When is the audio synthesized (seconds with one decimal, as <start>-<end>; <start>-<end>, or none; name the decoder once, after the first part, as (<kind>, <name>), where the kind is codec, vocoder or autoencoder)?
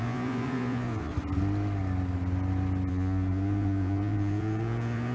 0.0-1.1 (vocoder, Vocos); 2.9-5.1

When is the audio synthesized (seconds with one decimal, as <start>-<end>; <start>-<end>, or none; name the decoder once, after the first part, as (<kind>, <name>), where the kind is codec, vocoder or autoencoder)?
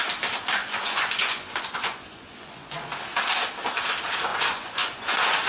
0.6-2.9 (vocoder, Vocos); 4.3-5.5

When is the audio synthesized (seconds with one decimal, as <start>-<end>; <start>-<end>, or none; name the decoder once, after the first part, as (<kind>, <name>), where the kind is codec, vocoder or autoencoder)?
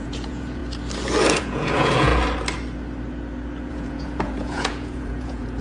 0.0-0.6 (vocoder, Vocos); 1.4-2.1; 3.7-5.6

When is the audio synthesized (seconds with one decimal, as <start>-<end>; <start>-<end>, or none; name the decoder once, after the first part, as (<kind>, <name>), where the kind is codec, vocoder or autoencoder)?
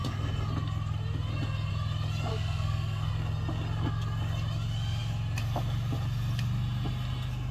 2.3-3.1 (codec, SNAC)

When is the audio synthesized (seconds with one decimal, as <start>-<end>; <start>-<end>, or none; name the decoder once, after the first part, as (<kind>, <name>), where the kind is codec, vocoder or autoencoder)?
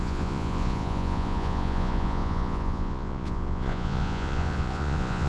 0.0-5.3 (vocoder, Vocos)